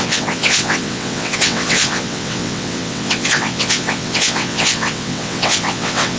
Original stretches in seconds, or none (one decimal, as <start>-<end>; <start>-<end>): none